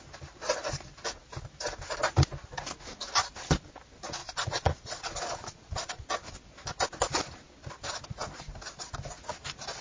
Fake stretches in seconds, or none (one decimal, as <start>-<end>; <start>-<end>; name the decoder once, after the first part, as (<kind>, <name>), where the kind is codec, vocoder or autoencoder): 4.2-6.1 (vocoder, Vocos)